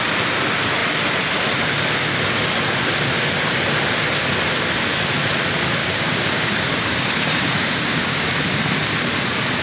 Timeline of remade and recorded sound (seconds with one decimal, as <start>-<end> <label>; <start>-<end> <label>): 0.0-5.8 recorded; 5.8-8.4 remade; 8.4-9.6 recorded